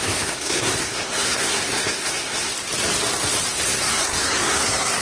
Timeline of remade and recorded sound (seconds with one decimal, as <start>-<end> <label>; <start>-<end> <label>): 0.0-2.5 remade; 2.5-3.5 recorded; 3.5-5.0 remade